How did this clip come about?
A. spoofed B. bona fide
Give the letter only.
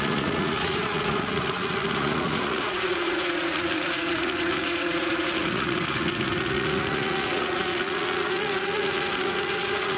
A